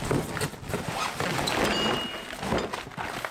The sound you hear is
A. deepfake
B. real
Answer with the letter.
B